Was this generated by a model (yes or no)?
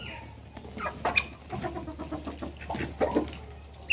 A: no